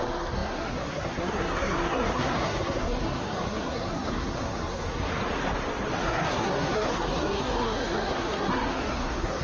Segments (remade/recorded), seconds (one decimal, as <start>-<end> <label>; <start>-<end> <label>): 0.0-5.1 remade; 5.1-6.0 recorded; 6.0-9.4 remade